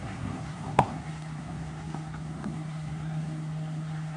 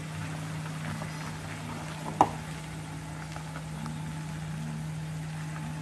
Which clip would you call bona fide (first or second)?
second